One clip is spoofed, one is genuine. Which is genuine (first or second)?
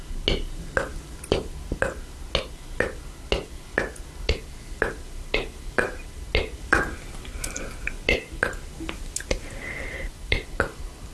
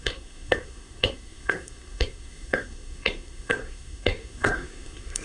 first